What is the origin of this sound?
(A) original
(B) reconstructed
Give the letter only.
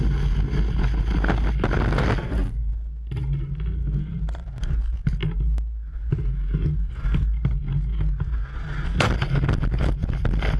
A